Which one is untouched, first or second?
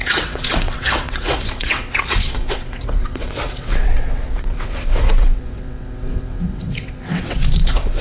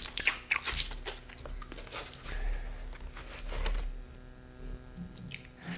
second